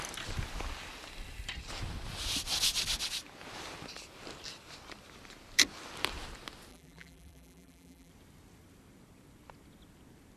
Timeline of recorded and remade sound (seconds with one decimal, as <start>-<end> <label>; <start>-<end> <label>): 0.0-6.7 recorded; 6.7-8.1 remade; 8.1-10.4 recorded